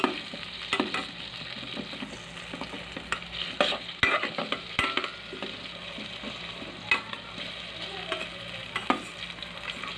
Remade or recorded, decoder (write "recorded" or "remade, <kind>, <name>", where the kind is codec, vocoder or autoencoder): recorded